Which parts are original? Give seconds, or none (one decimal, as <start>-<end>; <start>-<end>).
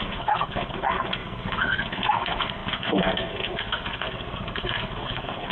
none